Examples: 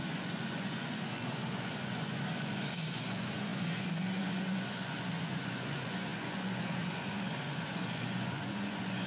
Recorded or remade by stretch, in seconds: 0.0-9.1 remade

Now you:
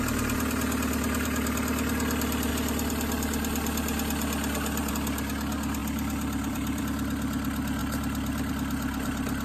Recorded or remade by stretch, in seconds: 0.0-5.8 recorded; 5.8-6.8 remade; 6.8-7.8 recorded; 7.8-8.5 remade; 8.5-9.4 recorded